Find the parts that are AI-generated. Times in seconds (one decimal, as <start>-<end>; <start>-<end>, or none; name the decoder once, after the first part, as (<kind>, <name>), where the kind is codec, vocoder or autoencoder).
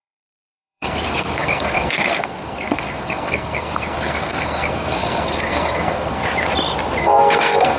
0.0-6.2 (codec, SNAC); 7.0-7.8